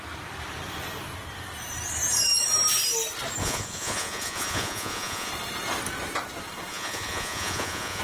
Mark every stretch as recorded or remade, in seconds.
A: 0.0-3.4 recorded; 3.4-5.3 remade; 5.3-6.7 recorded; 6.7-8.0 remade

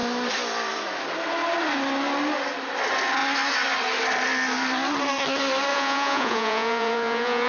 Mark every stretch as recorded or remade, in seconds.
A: 0.0-5.7 recorded; 5.7-7.5 remade